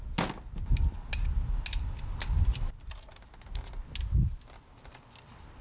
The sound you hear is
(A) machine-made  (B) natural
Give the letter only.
B